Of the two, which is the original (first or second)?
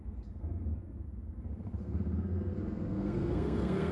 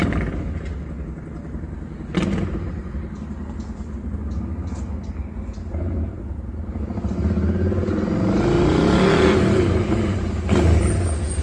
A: second